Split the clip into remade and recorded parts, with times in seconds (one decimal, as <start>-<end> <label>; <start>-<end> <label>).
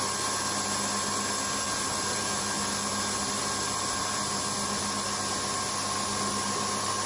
0.0-7.1 recorded